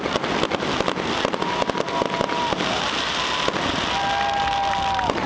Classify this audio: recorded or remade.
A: recorded